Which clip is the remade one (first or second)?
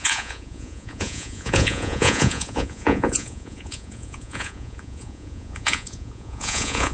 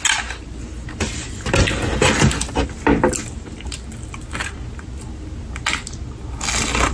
first